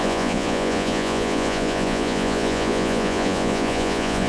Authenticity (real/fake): fake